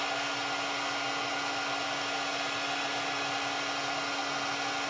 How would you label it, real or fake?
real